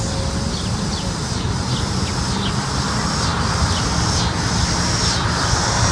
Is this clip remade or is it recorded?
recorded